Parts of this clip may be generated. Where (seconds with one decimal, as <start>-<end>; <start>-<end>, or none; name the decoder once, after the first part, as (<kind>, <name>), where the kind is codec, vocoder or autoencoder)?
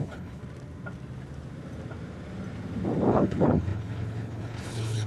0.0-0.4 (codec, HILCodec); 3.1-5.1